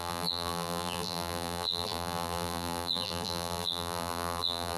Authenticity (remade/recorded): remade